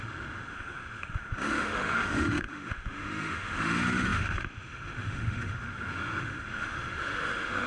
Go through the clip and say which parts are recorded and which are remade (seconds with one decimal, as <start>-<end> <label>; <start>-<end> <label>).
0.0-7.7 remade